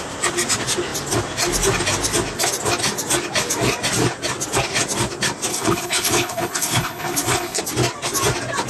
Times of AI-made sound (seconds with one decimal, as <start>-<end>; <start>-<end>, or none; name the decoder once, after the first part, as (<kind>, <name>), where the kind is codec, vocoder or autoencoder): 5.5-7.6 (codec, HILCodec)

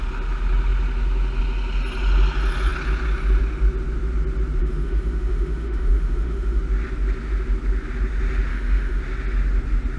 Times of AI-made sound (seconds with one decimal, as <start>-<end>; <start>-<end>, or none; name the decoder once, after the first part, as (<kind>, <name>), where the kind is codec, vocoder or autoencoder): 4.6-6.6 (autoencoder, DAC-VAE); 8.5-9.0

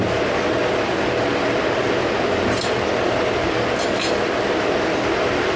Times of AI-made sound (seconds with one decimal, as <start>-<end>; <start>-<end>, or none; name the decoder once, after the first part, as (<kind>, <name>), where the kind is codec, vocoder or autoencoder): none

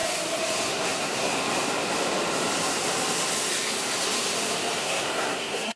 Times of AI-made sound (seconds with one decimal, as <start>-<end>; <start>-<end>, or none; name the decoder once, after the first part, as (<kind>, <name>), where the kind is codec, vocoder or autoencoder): 0.7-1.3 (codec, SNAC); 4.8-5.8

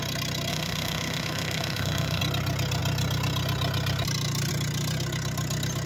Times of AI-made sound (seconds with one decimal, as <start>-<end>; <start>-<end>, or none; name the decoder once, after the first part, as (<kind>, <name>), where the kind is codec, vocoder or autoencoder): 0.5-2.2 (autoencoder, DAC-VAE)

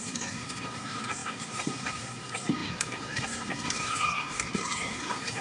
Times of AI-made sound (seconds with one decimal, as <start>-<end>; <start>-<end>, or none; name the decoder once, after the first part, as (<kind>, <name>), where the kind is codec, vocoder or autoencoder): 0.0-5.4 (codec, SNAC)

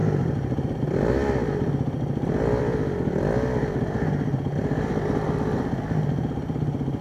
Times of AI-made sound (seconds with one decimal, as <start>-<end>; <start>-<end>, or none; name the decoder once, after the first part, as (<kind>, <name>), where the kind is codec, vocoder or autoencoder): 3.6-5.8 (vocoder, BigVGAN v2)

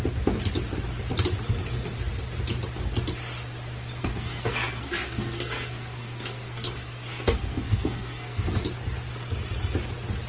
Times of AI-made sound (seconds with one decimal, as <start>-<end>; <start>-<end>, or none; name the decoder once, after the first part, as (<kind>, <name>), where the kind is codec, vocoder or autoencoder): 4.0-8.6 (codec, SNAC)